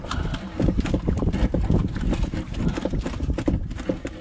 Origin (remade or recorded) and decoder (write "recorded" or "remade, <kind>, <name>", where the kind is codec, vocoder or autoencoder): recorded